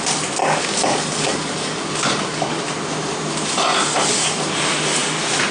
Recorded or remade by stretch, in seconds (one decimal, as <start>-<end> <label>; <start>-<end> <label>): 0.0-0.4 recorded; 0.4-2.6 remade; 2.6-5.5 recorded